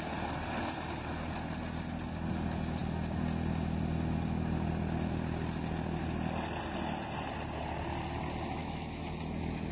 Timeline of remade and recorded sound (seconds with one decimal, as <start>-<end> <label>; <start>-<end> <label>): 0.0-8.6 recorded; 8.6-9.2 remade; 9.2-9.7 recorded